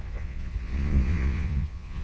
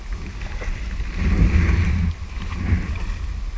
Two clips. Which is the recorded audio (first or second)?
second